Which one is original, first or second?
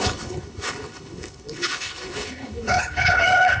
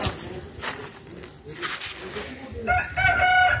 second